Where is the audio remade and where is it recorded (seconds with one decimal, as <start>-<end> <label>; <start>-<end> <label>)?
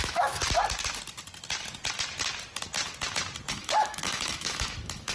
0.0-0.4 remade; 0.4-3.5 recorded; 3.5-5.1 remade